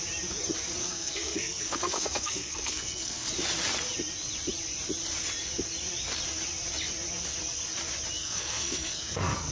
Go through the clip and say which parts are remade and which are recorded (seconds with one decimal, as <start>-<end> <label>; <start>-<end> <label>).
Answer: 0.0-0.8 recorded; 0.8-3.3 remade; 3.3-8.2 recorded; 8.2-9.5 remade